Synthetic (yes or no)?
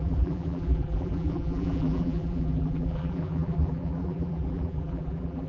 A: yes